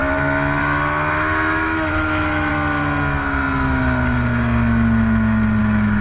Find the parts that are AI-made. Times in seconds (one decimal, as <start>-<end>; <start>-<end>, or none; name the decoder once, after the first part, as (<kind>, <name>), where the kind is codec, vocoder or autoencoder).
0.6-2.5 (autoencoder, DAC-VAE); 5.6-6.0